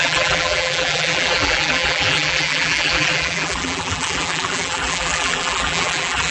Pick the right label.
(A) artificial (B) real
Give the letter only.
A